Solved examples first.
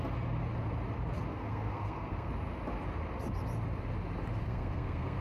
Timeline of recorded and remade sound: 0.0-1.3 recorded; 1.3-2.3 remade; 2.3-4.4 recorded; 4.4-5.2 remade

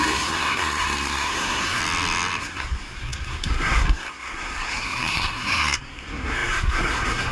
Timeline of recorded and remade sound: 0.0-1.8 remade; 1.8-2.4 recorded; 2.4-7.3 remade